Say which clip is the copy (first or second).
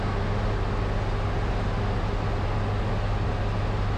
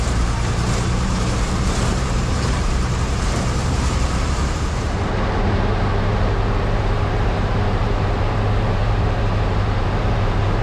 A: second